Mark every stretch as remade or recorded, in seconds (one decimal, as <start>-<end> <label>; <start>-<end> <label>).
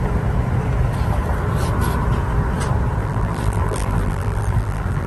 0.0-3.0 recorded; 3.0-5.1 remade